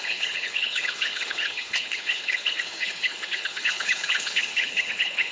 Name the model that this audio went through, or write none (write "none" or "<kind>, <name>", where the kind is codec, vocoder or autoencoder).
codec, HILCodec